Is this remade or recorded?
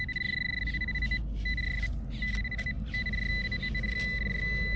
recorded